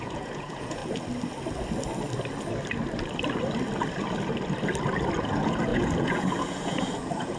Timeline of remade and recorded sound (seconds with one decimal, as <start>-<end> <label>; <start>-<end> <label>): 0.0-0.8 remade; 0.8-5.2 recorded; 5.2-7.4 remade